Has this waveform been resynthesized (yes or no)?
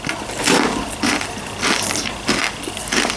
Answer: no